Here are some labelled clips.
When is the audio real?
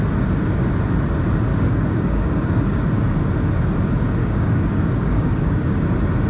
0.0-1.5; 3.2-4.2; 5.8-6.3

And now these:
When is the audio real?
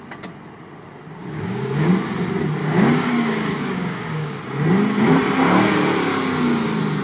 0.0-1.2; 1.9-2.6; 4.4-7.0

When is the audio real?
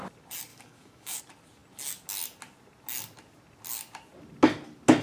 0.0-0.5; 1.2-5.0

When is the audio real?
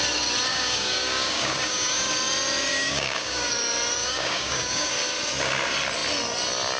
0.0-0.5; 2.1-2.7; 3.5-4.0; 4.9-6.8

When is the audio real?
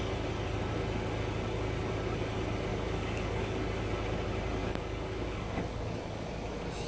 0.0-2.7; 3.8-4.6; 6.3-6.9